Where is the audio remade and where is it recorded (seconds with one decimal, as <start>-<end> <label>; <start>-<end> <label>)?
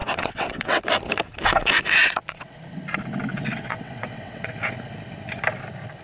0.0-0.8 remade; 0.8-2.0 recorded; 2.0-2.6 remade; 2.6-3.3 recorded; 3.3-4.5 remade; 4.5-6.0 recorded